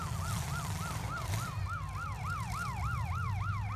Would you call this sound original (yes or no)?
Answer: yes